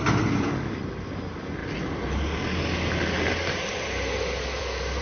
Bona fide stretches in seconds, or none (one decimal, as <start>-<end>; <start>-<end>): 0.0-5.0